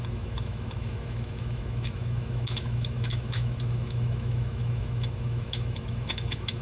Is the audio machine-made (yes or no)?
yes